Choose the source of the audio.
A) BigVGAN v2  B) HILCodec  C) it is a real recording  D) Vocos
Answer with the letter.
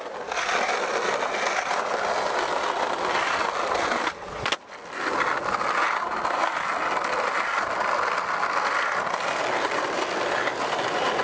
C